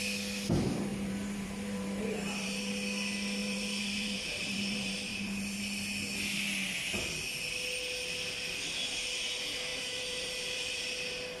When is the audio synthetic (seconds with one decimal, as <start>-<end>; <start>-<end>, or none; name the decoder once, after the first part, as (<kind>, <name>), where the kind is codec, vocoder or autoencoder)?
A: 0.9-2.7 (vocoder, BigVGAN v2); 3.4-5.6; 9.7-10.8